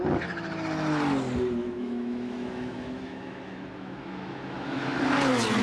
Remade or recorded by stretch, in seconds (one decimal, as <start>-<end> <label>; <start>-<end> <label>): 0.0-1.6 recorded; 1.6-5.0 remade; 5.0-5.6 recorded